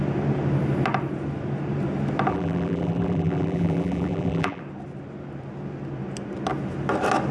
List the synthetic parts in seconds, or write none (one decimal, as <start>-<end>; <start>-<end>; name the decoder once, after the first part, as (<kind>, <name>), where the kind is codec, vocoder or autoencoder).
2.3-4.6 (vocoder, BigVGAN v2)